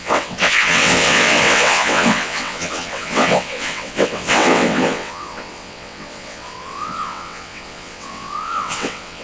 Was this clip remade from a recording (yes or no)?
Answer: yes